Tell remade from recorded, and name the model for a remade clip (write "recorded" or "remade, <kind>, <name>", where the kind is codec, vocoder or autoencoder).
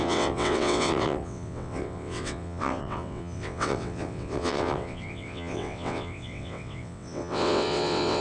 remade, vocoder, WaveNeXt